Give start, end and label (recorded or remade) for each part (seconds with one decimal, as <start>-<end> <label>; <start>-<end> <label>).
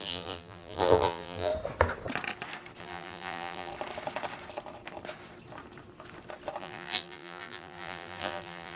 0.0-1.5 remade; 1.5-2.8 recorded; 2.8-3.7 remade; 3.7-6.6 recorded; 6.6-8.8 remade